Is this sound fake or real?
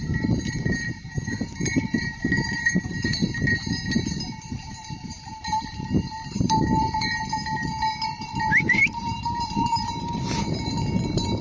fake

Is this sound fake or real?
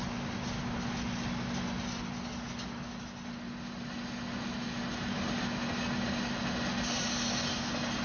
real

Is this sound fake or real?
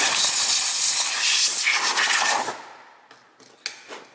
real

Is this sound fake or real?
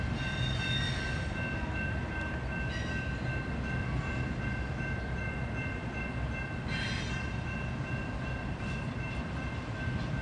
real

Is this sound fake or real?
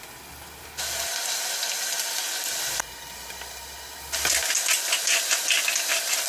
real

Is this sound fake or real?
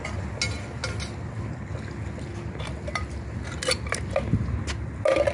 real